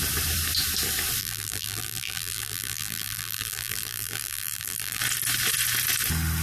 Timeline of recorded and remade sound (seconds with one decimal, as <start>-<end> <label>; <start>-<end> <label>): 0.0-1.2 recorded; 1.2-5.0 remade; 5.0-6.4 recorded